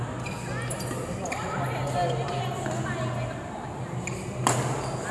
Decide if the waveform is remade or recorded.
recorded